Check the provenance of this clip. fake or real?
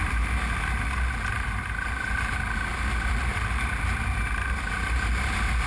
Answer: real